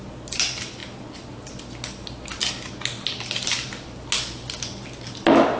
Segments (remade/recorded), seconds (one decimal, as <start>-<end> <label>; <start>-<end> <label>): 0.0-5.6 recorded